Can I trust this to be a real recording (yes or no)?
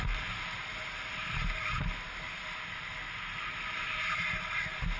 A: yes